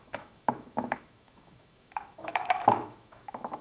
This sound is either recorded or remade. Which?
remade